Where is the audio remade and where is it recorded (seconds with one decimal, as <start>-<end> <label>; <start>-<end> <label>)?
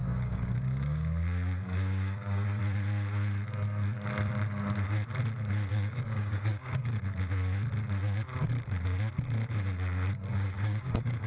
0.0-2.6 remade; 2.6-5.7 recorded; 5.7-7.0 remade; 7.0-10.3 recorded; 10.3-11.3 remade